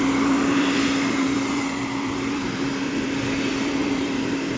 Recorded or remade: remade